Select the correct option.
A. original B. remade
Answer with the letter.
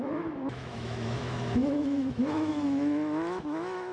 B